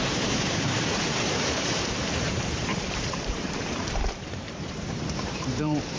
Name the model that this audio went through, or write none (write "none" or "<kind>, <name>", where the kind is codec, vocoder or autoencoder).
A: vocoder, BigVGAN v2